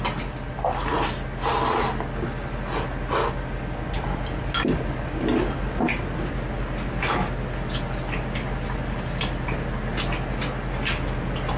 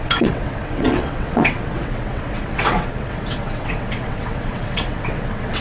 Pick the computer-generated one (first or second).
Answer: second